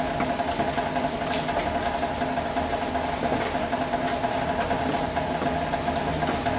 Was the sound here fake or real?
real